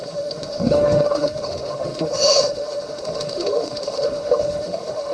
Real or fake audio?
fake